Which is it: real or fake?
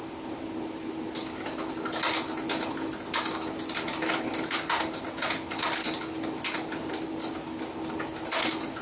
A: real